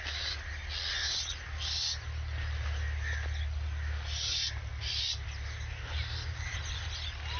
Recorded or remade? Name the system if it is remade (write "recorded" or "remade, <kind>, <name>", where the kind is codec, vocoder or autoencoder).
recorded